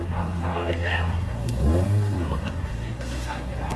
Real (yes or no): no